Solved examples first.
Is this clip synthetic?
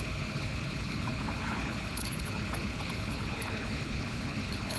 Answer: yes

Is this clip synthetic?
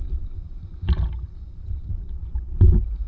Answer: no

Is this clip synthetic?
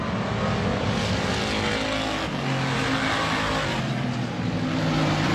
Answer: no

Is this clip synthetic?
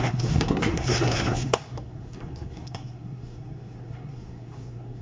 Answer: yes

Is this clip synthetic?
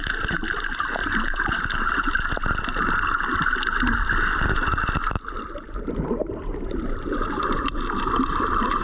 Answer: no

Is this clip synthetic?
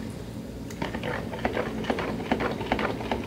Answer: no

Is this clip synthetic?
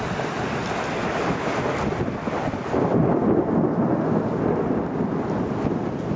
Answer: no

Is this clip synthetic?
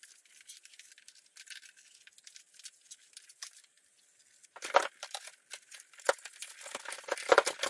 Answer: no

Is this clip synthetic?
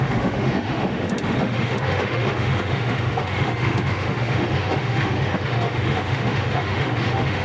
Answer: yes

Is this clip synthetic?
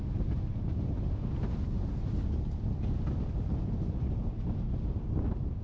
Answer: no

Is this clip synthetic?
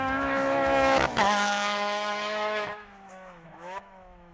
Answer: yes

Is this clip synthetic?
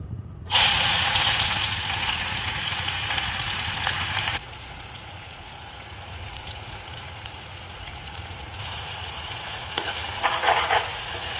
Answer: yes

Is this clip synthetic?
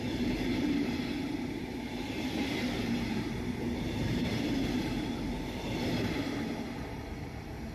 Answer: yes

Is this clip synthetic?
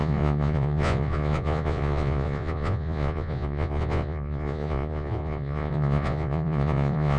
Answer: yes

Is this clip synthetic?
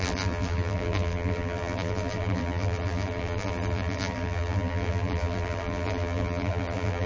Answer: yes